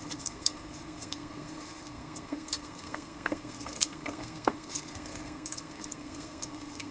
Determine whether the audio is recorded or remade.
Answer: remade